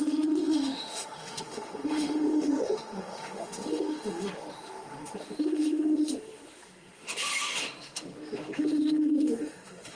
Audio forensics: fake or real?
fake